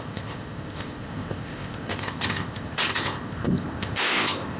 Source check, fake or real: fake